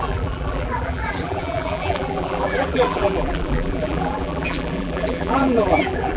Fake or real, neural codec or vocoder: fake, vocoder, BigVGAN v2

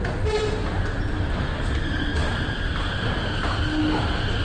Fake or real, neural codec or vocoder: real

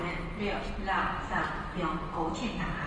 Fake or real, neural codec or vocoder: real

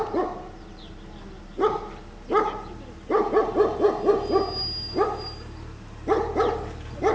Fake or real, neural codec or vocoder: real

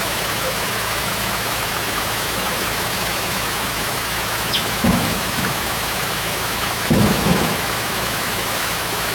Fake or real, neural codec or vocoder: fake, autoencoder, DAC-VAE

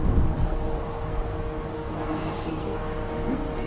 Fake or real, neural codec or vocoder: fake, codec, SNAC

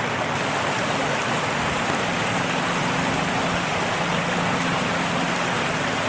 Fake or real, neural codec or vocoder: real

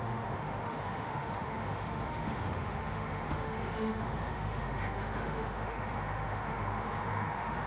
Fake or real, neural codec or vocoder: fake, autoencoder, DAC-VAE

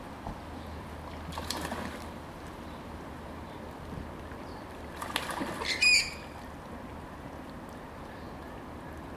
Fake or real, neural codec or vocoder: real